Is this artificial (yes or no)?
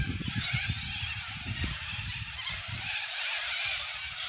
yes